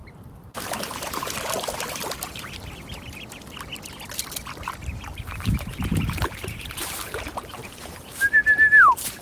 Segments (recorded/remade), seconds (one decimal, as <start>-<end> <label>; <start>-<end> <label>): 0.0-0.7 remade; 0.7-4.8 recorded; 4.8-8.2 remade; 8.2-9.2 recorded